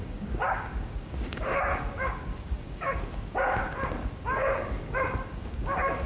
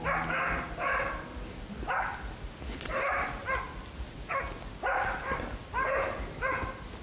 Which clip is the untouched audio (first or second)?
second